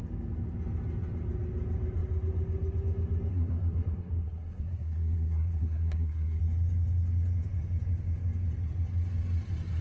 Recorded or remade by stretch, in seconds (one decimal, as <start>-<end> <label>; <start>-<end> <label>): 0.0-3.3 recorded; 3.3-6.4 remade; 6.4-9.8 recorded